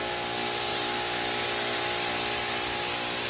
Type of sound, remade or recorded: remade